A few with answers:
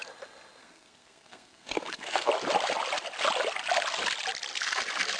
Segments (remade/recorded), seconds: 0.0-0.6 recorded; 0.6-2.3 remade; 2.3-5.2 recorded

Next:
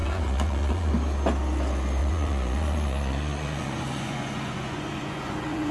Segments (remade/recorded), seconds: 0.0-0.9 remade; 0.9-2.0 recorded; 2.0-5.7 remade